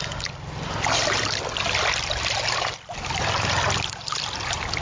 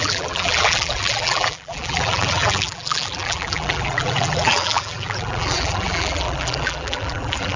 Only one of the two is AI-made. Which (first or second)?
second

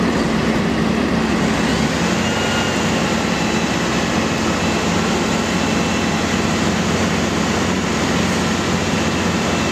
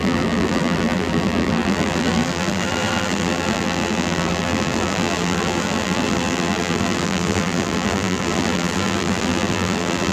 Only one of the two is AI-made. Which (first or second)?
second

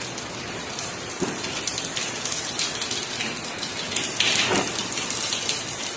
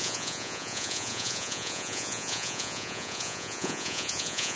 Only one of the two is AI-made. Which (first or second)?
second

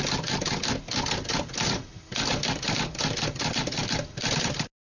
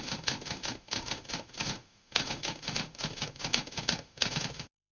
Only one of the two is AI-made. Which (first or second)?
second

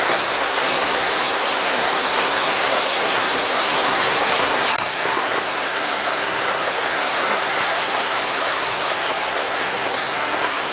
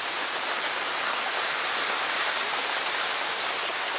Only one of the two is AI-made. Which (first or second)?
first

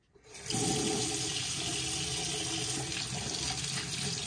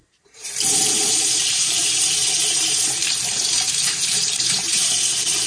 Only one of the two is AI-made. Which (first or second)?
second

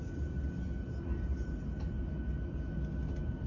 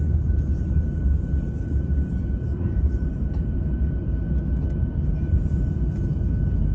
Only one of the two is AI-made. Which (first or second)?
second